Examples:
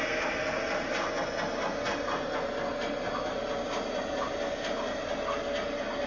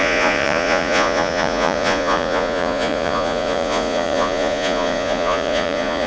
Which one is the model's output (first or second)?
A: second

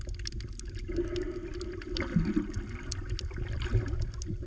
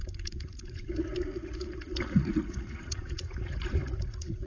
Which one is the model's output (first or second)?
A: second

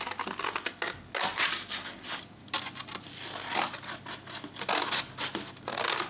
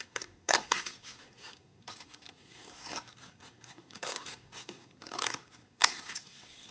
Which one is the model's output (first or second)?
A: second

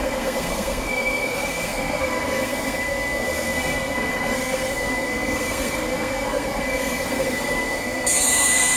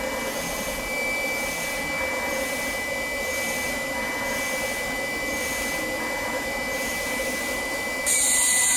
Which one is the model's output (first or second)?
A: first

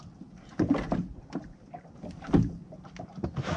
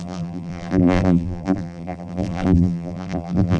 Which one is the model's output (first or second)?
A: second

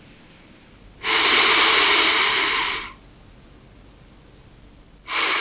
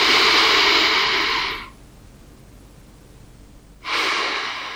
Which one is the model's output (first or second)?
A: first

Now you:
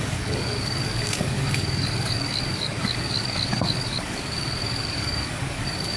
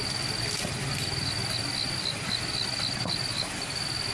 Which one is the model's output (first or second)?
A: first